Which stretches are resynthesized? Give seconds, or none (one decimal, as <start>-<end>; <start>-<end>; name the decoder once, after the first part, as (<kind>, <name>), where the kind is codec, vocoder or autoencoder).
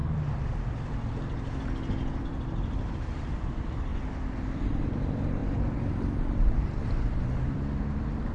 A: 2.2-3.9 (vocoder, BigVGAN v2); 4.9-8.3